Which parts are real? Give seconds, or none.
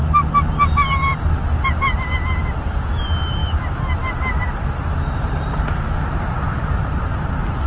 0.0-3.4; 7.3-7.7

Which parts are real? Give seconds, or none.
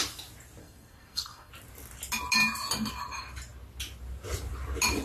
0.0-0.6; 1.5-5.0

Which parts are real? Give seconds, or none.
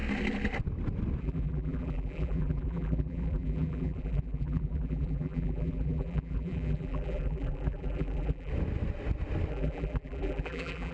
0.0-1.2; 8.5-9.5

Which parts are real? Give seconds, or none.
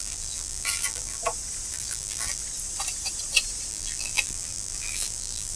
1.2-1.7; 2.4-3.7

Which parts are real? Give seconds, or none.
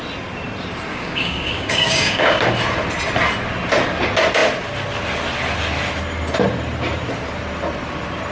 0.0-0.9; 2.4-8.3